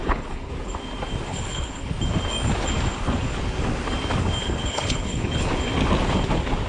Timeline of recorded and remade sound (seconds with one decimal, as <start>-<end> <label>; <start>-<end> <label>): 0.0-0.5 remade; 0.5-1.3 recorded; 1.3-1.9 remade; 1.9-4.4 recorded; 4.4-5.5 remade; 5.5-6.7 recorded